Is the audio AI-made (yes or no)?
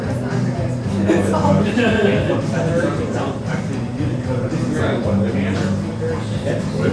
no